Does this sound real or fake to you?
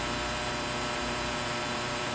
fake